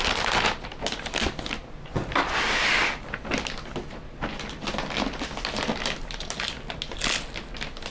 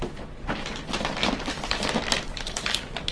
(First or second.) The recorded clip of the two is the first